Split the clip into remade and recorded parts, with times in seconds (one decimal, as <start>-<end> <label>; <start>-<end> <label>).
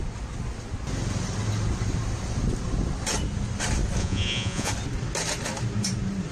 0.0-4.0 recorded; 4.0-4.7 remade; 4.7-6.3 recorded